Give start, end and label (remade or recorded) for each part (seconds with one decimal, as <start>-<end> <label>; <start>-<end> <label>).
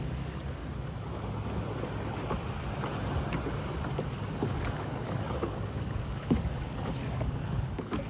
0.0-0.6 remade; 0.6-4.3 recorded; 4.3-8.1 remade